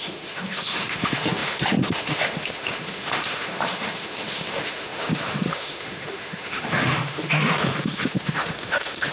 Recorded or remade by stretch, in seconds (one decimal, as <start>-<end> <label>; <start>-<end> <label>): 0.0-9.1 remade